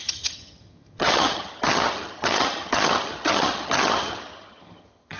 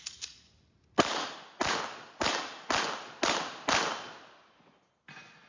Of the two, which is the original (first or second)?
second